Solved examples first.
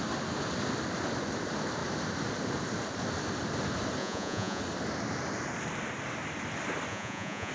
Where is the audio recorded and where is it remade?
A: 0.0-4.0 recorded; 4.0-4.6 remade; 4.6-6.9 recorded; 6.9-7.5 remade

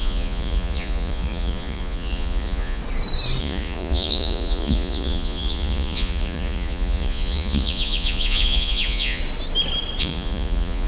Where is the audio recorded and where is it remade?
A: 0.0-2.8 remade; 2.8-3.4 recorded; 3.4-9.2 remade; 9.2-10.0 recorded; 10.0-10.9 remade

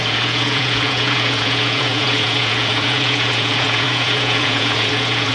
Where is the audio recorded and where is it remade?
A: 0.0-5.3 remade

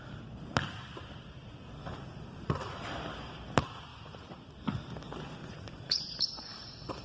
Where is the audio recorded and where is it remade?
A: 0.0-1.8 recorded; 1.8-2.8 remade; 2.8-3.9 recorded; 3.9-4.5 remade; 4.5-5.4 recorded; 5.4-6.0 remade; 6.0-7.0 recorded

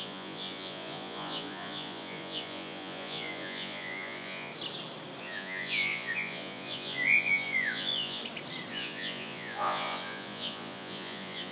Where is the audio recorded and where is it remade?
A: 0.0-4.5 remade; 4.5-5.2 recorded; 5.2-8.2 remade; 8.2-8.7 recorded; 8.7-11.5 remade

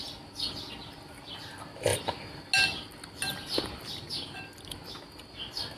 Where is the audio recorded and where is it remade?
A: 0.0-5.8 recorded